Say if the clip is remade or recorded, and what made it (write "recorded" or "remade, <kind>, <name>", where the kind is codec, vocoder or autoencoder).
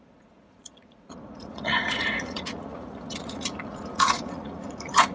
remade, vocoder, Vocos